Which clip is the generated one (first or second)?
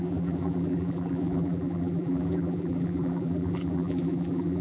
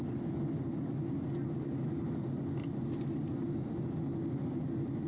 first